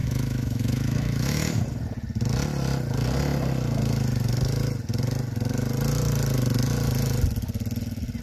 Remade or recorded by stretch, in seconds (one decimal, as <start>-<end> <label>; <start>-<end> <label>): 0.0-1.6 remade; 1.6-8.2 recorded